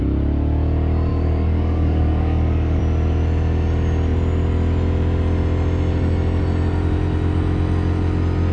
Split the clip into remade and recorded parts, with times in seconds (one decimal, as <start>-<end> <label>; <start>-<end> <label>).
0.0-1.1 recorded; 1.1-2.8 remade; 2.8-8.5 recorded